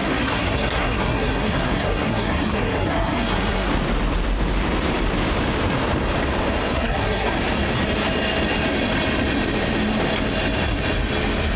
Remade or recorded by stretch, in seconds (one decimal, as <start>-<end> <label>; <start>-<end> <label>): 0.0-3.7 remade; 3.7-6.7 recorded; 6.7-7.4 remade; 7.4-11.6 recorded